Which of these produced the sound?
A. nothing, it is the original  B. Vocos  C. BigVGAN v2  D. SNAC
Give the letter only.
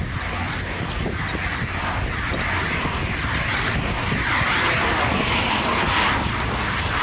A